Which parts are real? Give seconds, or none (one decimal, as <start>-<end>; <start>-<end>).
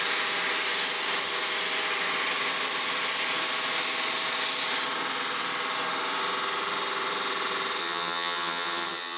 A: 0.0-7.8